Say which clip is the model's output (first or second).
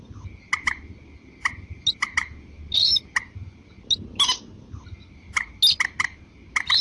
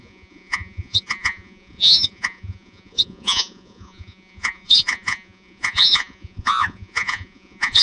second